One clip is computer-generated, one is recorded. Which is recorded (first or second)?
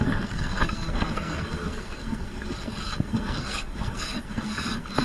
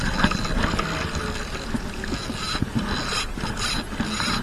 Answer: second